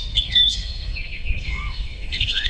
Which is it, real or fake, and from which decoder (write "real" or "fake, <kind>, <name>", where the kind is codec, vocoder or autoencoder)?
fake, codec, SNAC